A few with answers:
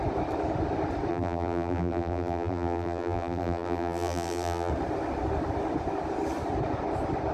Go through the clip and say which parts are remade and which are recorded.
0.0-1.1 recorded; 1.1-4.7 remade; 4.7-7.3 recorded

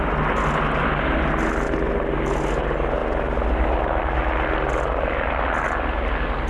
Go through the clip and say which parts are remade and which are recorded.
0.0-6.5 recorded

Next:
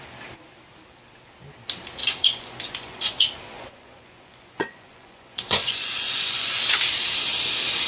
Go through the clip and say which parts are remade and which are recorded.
0.0-2.0 recorded; 2.0-6.7 remade; 6.7-7.9 recorded

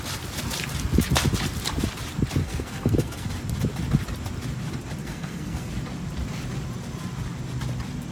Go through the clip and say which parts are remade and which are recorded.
0.0-2.4 recorded; 2.4-3.3 remade; 3.3-5.0 recorded; 5.0-5.7 remade; 5.7-8.1 recorded